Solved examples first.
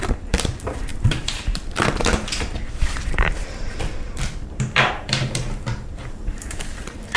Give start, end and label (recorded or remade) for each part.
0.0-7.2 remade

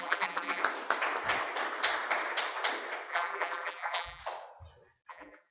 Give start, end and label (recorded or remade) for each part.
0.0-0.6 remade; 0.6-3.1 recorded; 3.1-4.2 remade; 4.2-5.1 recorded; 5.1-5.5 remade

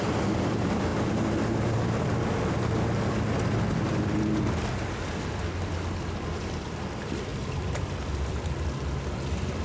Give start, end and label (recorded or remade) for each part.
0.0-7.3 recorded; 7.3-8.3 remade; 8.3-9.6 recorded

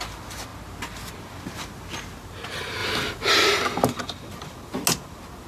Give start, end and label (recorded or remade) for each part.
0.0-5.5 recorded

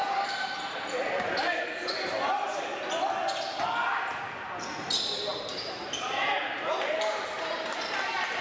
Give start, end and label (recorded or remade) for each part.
0.0-1.7 remade; 1.7-5.3 recorded; 5.3-8.4 remade

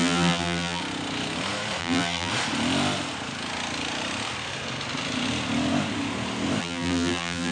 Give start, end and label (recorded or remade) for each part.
0.0-0.8 remade; 0.8-1.8 recorded; 1.8-2.3 remade; 2.3-6.6 recorded; 6.6-7.5 remade

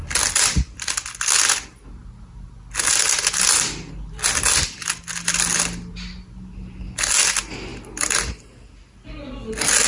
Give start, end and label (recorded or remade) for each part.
0.0-9.9 recorded

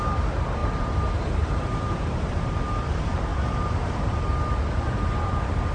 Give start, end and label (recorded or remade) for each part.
0.0-0.6 recorded; 0.6-2.4 remade; 2.4-3.3 recorded; 3.3-4.2 remade; 4.2-5.7 recorded